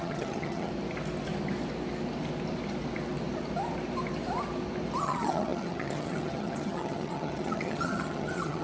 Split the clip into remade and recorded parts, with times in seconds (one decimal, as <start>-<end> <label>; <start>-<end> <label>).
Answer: 0.0-0.7 remade; 0.7-5.0 recorded; 5.0-8.6 remade